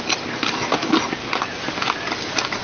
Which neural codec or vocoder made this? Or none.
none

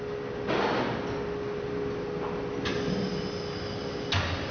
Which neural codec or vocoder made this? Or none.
none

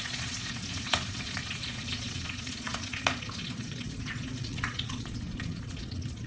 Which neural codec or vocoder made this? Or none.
vocoder, Vocos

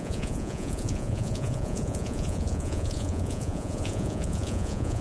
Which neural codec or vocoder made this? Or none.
vocoder, Vocos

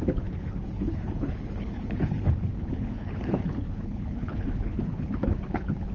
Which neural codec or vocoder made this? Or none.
codec, HILCodec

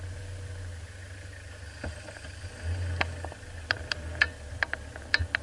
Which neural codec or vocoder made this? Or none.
none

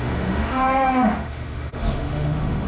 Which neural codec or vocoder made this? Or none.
autoencoder, DAC-VAE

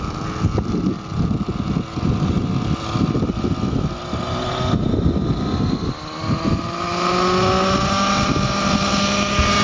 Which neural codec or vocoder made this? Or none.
none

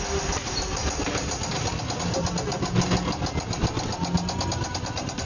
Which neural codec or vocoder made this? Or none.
none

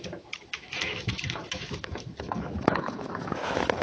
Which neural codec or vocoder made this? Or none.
autoencoder, DAC-VAE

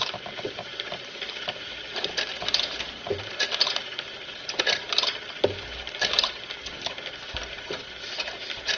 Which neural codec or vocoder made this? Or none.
vocoder, BigVGAN v2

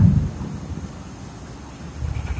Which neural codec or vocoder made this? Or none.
none